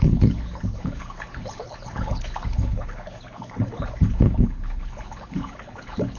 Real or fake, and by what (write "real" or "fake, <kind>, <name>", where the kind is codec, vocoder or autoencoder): fake, codec, HILCodec